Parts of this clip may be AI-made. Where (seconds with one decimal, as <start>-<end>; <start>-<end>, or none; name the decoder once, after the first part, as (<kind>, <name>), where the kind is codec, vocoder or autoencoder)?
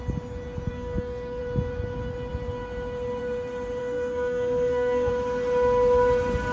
0.7-1.4 (codec, SNAC); 3.8-5.1